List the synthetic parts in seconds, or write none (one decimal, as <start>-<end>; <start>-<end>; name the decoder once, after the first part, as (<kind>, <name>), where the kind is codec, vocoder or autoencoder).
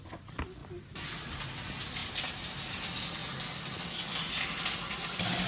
0.0-0.6 (vocoder, BigVGAN v2); 1.1-2.0; 2.7-3.2; 4.5-5.5